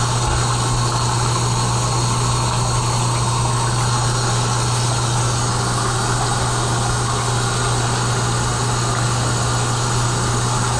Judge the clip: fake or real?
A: real